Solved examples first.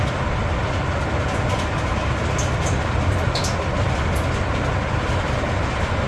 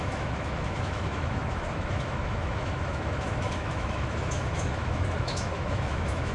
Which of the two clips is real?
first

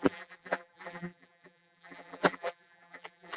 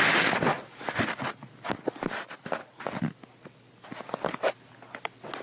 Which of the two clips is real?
second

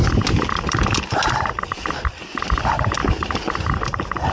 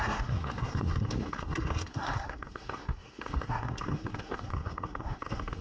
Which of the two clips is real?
first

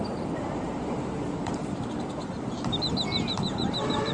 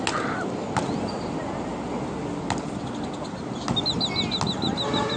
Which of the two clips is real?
second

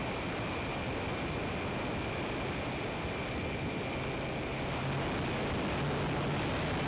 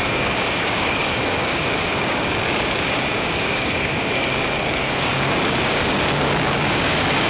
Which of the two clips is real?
first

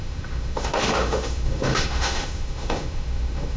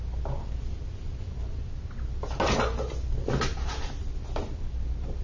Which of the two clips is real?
second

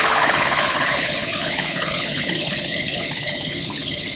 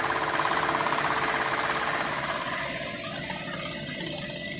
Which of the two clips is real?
second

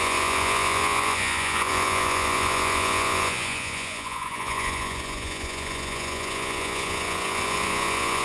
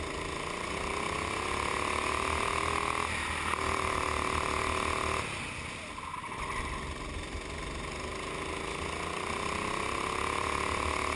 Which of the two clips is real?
second